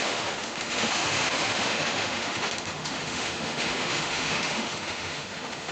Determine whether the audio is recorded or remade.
remade